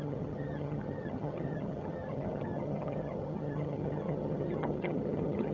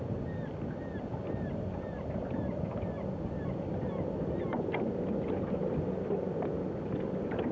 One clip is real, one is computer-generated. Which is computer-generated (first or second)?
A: first